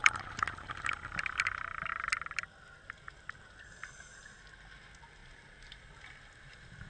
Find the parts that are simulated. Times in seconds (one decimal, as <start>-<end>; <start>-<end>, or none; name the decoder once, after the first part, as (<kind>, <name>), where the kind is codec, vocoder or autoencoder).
0.0-0.7 (vocoder, BigVGAN v2); 5.2-5.9